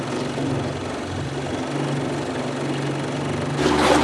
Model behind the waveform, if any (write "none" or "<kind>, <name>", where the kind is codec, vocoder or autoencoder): none